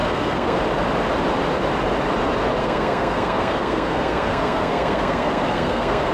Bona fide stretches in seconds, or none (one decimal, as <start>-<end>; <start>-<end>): 0.6-2.6